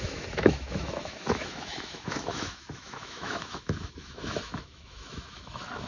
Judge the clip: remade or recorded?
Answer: remade